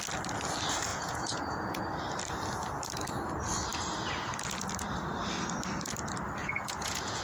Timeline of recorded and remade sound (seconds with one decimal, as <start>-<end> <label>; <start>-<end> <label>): 0.0-0.9 recorded; 0.9-1.8 remade; 1.8-6.4 recorded; 6.4-7.2 remade